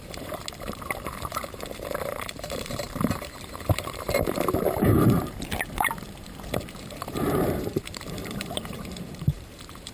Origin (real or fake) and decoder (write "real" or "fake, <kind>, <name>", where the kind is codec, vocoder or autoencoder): fake, vocoder, BigVGAN v2